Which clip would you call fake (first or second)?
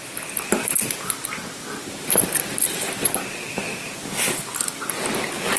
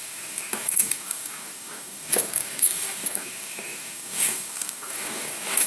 second